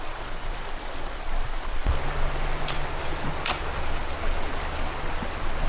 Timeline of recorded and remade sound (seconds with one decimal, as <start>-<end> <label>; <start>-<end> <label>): 0.0-5.7 recorded